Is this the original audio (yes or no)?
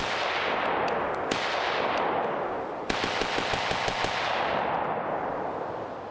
yes